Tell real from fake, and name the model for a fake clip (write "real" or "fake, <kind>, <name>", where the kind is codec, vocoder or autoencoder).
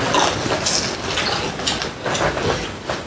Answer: real